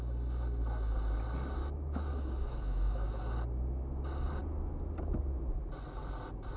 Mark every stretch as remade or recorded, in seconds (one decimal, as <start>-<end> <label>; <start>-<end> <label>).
0.0-1.6 recorded; 1.6-3.2 remade; 3.2-6.6 recorded

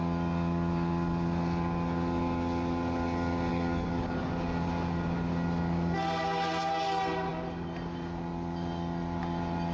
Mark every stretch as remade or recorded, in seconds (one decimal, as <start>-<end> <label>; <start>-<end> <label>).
0.0-3.5 recorded; 3.5-4.3 remade; 4.3-9.7 recorded